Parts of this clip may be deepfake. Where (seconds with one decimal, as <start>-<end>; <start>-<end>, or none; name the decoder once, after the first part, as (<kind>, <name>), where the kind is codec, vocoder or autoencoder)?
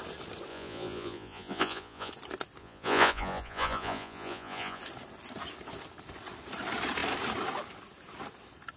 0.5-2.1 (vocoder, Vocos); 2.6-4.8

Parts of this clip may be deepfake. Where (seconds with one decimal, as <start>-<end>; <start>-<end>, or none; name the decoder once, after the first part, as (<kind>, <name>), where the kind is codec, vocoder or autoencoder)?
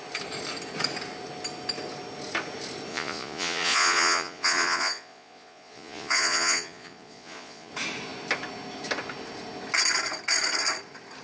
2.9-7.7 (vocoder, Vocos)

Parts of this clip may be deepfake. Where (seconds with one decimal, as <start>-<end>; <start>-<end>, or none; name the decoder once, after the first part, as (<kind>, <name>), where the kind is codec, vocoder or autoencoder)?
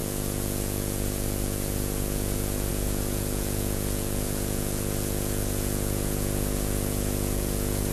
0.0-7.9 (vocoder, Vocos)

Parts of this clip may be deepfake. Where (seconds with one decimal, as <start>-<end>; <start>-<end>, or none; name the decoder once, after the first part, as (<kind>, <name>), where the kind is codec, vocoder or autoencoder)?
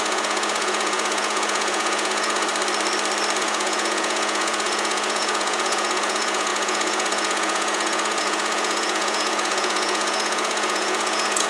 0.0-2.5 (vocoder, Vocos); 3.4-11.5